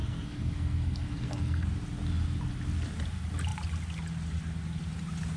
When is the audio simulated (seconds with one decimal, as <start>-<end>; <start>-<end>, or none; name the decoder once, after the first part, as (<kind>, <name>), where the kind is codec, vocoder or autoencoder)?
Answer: 0.0-1.7 (codec, SNAC)